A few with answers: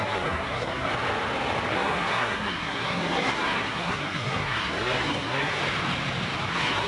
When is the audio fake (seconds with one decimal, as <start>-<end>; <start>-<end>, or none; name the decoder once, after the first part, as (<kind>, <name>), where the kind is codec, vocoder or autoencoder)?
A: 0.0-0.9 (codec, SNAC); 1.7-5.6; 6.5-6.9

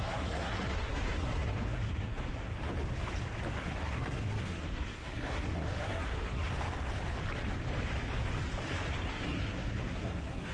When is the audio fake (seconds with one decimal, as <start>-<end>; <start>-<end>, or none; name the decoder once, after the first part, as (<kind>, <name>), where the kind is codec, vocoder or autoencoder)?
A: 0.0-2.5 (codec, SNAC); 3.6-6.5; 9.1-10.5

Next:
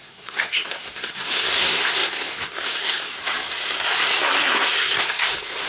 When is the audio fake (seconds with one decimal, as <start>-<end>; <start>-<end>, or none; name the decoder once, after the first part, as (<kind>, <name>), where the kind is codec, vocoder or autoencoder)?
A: 0.0-5.7 (codec, SNAC)

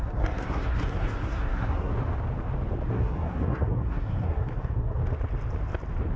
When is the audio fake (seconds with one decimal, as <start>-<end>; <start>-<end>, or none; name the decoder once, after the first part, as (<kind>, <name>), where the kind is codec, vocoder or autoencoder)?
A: 0.0-1.9 (codec, SNAC); 2.9-5.0